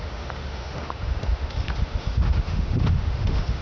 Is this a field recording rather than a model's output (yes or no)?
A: no